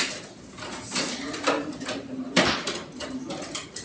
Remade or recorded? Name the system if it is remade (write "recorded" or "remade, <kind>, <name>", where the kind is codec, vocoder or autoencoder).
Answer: recorded